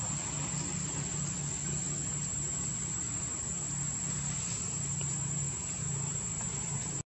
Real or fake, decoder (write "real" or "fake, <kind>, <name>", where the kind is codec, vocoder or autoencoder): real